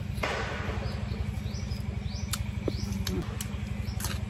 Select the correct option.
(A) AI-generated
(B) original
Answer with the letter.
B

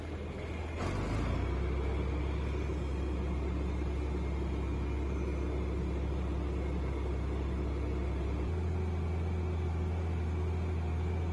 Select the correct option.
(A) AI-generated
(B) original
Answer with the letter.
B